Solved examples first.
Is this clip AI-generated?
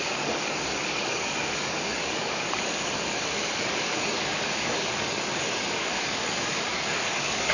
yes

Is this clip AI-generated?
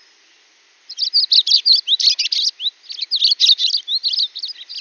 no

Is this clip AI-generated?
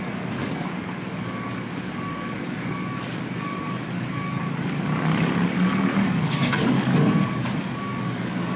yes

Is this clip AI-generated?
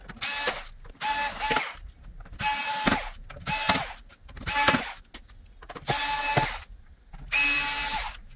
no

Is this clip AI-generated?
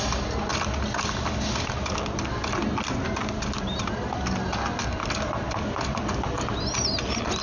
no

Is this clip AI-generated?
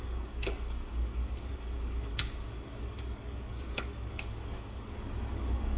yes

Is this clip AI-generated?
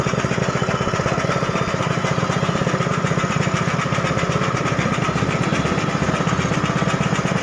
no